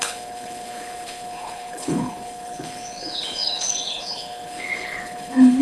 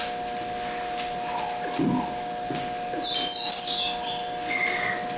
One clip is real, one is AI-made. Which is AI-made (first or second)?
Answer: first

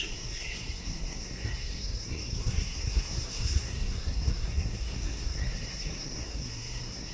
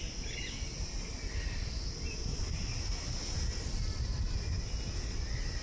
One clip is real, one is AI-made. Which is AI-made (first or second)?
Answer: first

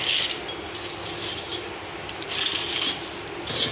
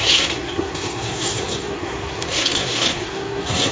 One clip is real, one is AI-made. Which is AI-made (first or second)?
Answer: second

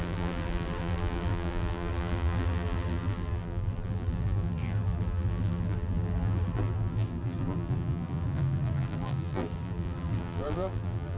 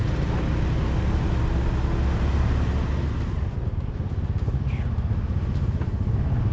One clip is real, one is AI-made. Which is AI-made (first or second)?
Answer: first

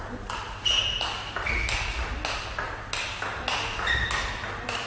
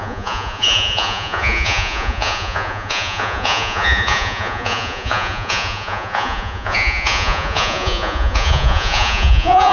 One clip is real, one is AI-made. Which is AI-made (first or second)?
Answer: second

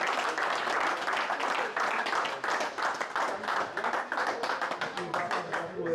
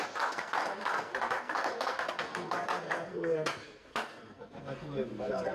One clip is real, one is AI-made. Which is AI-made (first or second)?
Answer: second